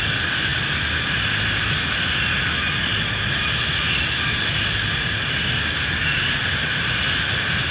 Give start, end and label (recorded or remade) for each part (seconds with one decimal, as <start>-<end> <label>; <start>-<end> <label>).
0.0-7.7 recorded